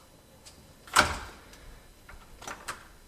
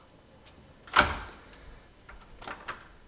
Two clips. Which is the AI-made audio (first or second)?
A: first